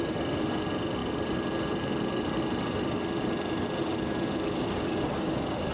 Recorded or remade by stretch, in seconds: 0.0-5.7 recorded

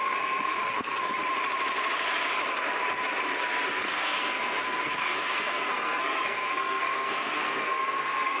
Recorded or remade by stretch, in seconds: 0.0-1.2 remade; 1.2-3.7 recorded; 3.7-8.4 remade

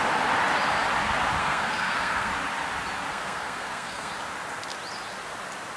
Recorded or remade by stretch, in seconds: 0.0-1.4 recorded; 1.4-2.3 remade; 2.3-3.1 recorded; 3.1-4.1 remade; 4.1-5.8 recorded

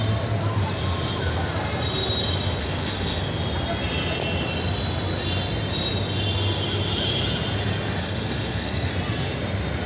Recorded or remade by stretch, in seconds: 0.0-2.6 recorded; 2.6-3.2 remade; 3.2-8.0 recorded; 8.0-8.9 remade; 8.9-9.9 recorded

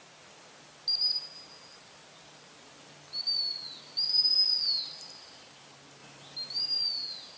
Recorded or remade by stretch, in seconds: 0.0-7.4 recorded

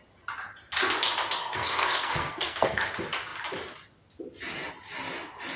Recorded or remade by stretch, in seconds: 0.0-1.4 recorded; 1.4-2.9 remade; 2.9-5.6 recorded

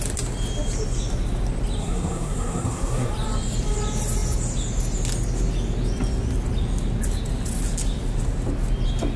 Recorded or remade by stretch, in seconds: 0.0-1.8 recorded; 1.8-3.1 remade; 3.1-9.2 recorded